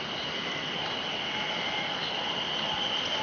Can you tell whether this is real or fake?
real